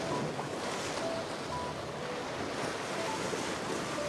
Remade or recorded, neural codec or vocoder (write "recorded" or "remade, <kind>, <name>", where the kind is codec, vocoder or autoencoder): recorded